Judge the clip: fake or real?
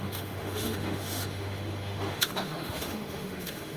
fake